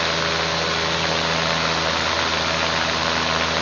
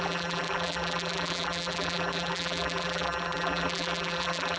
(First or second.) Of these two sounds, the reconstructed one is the second